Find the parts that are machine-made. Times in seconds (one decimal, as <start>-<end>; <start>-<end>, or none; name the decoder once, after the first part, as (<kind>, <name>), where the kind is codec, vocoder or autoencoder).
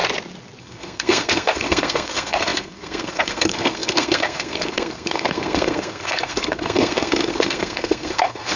0.6-8.6 (codec, SNAC)